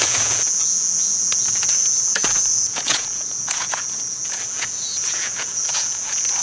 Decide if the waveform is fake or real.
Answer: fake